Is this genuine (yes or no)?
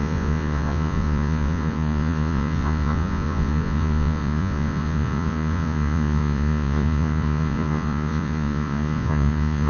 no